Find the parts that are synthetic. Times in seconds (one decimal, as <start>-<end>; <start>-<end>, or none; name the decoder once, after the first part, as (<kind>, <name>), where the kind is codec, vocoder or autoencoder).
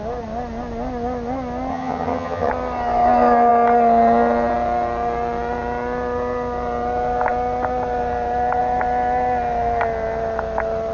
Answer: 1.7-2.5 (vocoder, HiFi-GAN)